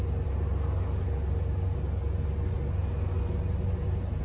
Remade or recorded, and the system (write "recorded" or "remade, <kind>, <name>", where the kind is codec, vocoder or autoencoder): recorded